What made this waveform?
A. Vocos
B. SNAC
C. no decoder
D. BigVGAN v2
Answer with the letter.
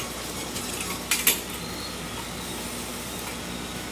C